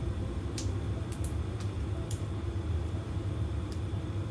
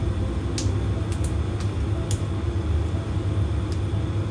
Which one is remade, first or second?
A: first